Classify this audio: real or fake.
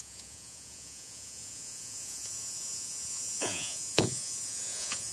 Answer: fake